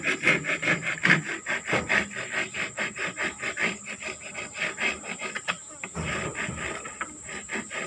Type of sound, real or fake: real